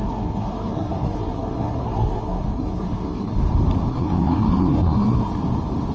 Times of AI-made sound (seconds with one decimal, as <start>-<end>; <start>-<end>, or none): 0.0-3.5; 3.9-5.4